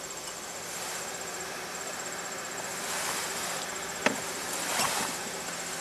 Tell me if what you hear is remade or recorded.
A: recorded